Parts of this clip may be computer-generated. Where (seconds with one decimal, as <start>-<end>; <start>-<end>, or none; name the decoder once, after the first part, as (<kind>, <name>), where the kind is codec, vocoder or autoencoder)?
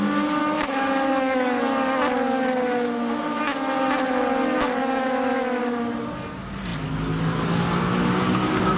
0.4-1.6 (autoencoder, DAC-VAE); 4.8-5.6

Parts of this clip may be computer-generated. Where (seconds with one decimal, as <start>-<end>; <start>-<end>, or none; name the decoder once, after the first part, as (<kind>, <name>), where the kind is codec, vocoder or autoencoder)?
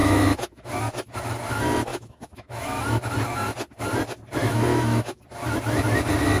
0.0-0.7 (autoencoder, DAC-VAE); 1.9-2.8; 4.4-5.2